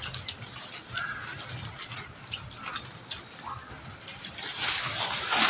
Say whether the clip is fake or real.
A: real